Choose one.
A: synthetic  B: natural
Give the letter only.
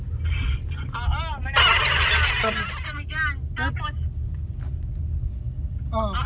B